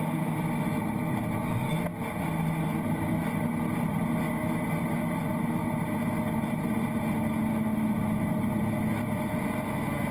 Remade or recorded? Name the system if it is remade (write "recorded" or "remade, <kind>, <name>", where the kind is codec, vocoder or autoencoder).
recorded